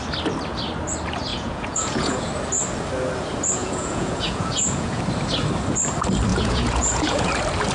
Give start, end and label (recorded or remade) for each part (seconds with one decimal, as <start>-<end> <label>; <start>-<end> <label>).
0.0-1.3 recorded; 1.3-2.3 remade; 2.3-3.6 recorded; 3.6-5.0 remade; 5.0-6.3 recorded; 6.3-7.3 remade; 7.3-7.7 recorded